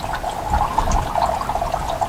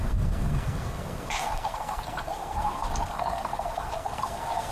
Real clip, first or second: first